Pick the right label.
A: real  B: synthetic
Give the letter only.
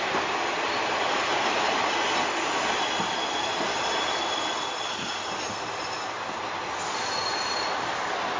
A